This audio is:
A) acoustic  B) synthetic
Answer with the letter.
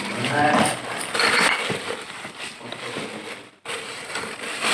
B